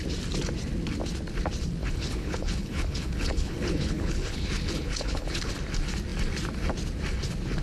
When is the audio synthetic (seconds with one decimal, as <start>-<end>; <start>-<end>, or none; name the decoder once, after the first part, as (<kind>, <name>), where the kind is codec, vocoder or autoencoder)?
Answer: 1.8-5.5 (codec, HILCodec)